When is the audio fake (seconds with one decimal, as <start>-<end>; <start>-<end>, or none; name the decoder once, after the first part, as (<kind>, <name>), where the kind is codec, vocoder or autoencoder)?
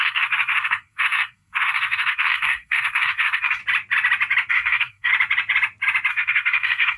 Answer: 0.0-3.6 (codec, SNAC); 4.5-5.1; 6.1-7.0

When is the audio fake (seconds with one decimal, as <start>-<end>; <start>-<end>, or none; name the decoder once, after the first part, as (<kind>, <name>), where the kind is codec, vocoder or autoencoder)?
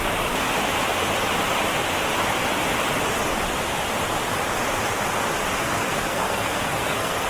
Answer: 5.6-7.3 (codec, SNAC)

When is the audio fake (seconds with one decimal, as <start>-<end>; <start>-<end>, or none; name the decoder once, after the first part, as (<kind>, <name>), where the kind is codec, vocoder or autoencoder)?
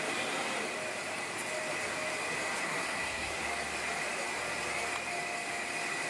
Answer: 2.6-3.4 (codec, SNAC)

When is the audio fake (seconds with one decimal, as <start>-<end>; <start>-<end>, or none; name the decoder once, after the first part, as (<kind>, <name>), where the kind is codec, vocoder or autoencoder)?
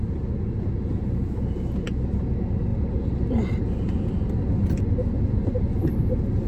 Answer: none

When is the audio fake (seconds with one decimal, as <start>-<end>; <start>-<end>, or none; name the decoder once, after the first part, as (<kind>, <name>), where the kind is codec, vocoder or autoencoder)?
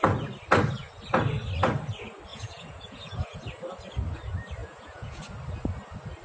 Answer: 2.3-3.4 (vocoder, Vocos); 4.6-5.2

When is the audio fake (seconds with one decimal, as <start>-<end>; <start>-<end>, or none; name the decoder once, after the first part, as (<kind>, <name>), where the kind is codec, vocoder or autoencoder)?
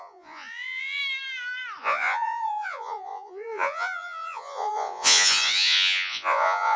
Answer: 0.0-1.0 (vocoder, Vocos); 1.8-6.8